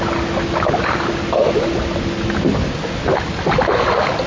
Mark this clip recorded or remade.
recorded